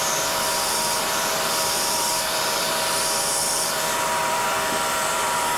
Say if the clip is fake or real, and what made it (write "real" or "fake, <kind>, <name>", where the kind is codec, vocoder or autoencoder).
fake, vocoder, BigVGAN v2